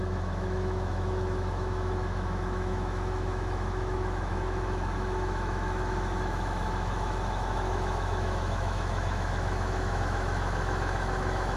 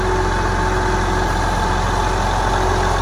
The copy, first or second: first